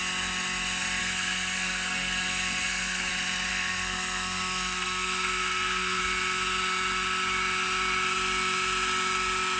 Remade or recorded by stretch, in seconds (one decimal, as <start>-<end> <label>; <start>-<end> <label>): 0.0-1.0 recorded; 1.0-3.1 remade; 3.1-3.5 recorded; 3.5-6.0 remade; 6.0-9.6 recorded